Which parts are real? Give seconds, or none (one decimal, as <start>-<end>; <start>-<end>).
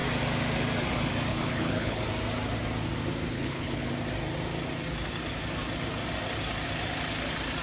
0.0-1.3; 2.0-3.3; 3.9-7.6